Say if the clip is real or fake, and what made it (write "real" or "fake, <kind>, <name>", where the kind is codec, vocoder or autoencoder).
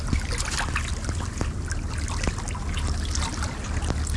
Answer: real